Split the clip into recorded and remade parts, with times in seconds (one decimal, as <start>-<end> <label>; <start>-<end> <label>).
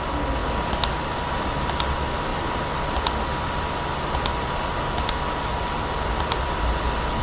0.0-7.2 recorded